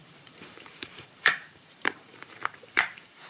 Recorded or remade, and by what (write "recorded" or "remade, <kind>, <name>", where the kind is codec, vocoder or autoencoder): remade, vocoder, BigVGAN v2